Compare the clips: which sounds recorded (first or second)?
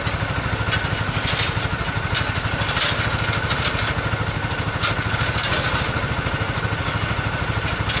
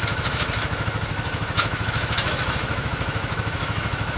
first